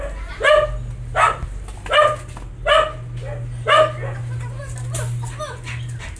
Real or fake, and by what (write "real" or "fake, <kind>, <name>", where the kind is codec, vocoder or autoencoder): real